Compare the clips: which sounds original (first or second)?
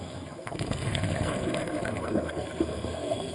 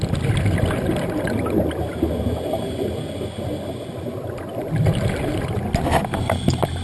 second